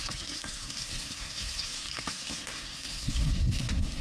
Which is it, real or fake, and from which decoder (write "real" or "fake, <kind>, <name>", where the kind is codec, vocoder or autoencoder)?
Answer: fake, codec, SNAC